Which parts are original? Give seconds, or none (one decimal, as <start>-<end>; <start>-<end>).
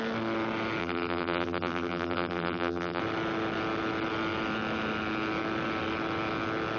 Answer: 0.0-0.8; 3.0-6.8